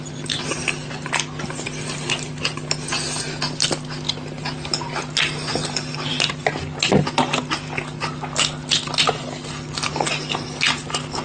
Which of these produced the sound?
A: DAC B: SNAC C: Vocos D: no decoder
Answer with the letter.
D